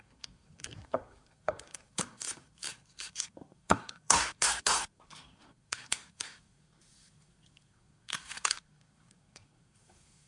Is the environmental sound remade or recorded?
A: remade